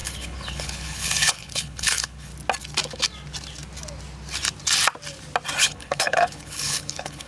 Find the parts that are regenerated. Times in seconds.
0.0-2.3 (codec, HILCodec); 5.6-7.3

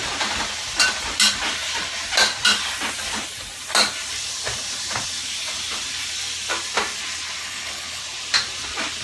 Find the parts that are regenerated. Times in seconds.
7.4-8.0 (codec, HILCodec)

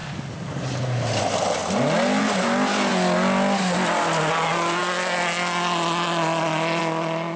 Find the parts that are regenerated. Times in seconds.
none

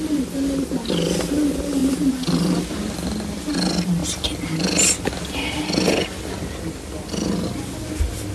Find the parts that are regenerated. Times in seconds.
none

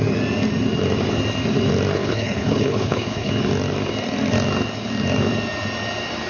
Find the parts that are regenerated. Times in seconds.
1.9-3.3 (codec, HILCodec)

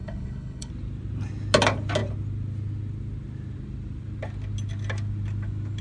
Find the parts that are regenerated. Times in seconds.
0.0-0.7 (codec, HILCodec)